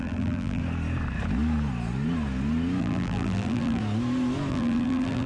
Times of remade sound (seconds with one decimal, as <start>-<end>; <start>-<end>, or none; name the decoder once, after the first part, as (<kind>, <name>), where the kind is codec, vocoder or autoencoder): 0.0-0.6 (vocoder, BigVGAN v2); 2.8-3.8; 4.5-5.3